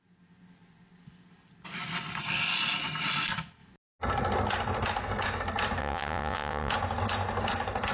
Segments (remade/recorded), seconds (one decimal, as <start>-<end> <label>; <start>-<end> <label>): 0.0-5.8 recorded; 5.8-6.7 remade; 6.7-7.9 recorded